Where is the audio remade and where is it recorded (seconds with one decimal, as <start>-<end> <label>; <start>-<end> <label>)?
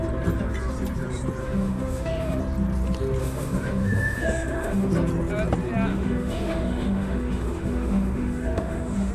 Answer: 0.0-1.4 recorded; 1.4-2.4 remade; 2.4-3.2 recorded; 3.2-4.9 remade; 4.9-5.9 recorded; 5.9-9.1 remade